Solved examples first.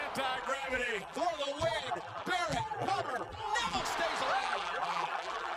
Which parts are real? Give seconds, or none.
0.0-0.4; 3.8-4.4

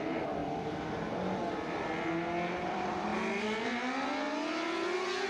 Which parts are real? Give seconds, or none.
0.4-2.6; 3.1-5.3

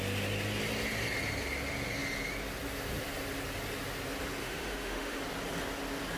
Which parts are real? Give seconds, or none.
0.0-4.4; 5.2-6.2